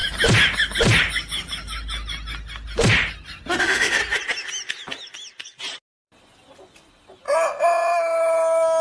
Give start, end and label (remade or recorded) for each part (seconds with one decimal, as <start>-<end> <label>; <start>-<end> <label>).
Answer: 0.0-3.6 recorded; 3.6-4.0 remade; 4.0-8.8 recorded